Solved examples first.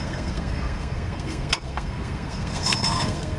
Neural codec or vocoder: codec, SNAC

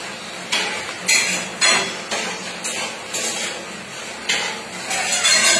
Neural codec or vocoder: none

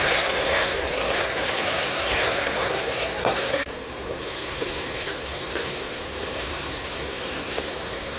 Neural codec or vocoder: codec, SNAC